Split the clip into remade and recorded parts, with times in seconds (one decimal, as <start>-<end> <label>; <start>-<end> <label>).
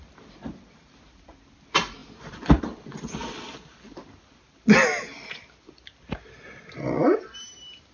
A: 0.0-7.9 recorded